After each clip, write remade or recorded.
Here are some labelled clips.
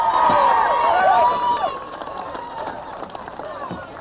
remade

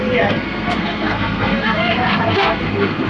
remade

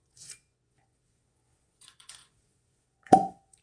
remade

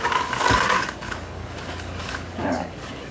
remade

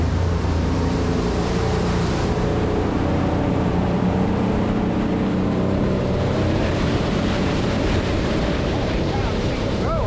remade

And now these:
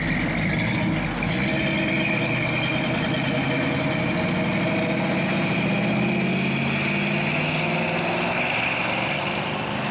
recorded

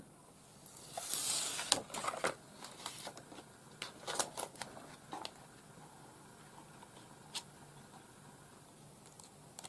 recorded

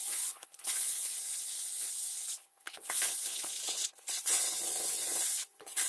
remade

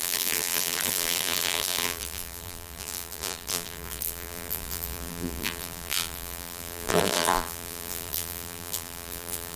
remade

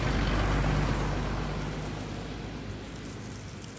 recorded